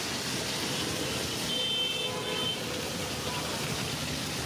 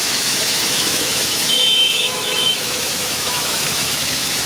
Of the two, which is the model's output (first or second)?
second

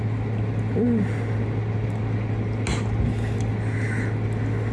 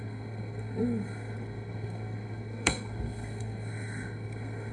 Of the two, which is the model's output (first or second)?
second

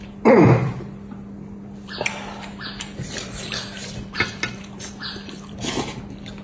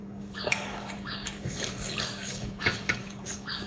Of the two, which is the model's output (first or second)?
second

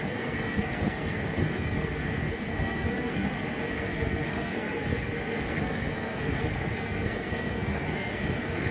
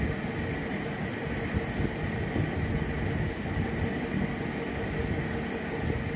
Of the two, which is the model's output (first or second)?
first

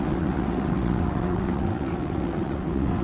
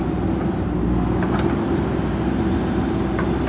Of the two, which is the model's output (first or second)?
first